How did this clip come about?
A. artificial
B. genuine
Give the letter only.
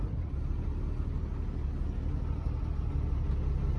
B